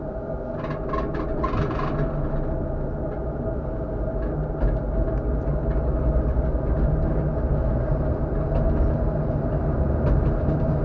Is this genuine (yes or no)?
yes